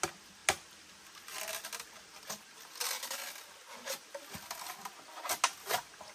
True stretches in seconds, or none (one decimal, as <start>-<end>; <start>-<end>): 0.0-6.1